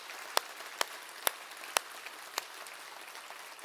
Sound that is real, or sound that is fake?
real